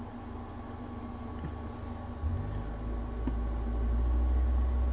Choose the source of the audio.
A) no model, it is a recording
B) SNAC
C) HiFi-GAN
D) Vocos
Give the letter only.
A